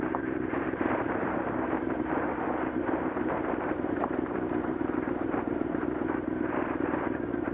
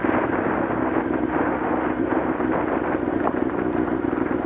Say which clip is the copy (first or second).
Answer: first